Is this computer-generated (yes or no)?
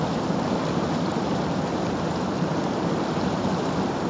no